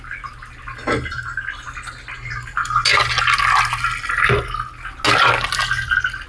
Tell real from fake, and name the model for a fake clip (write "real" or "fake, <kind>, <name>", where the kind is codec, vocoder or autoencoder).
real